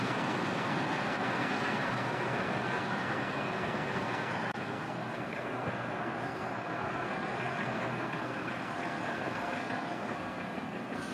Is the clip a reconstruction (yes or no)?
yes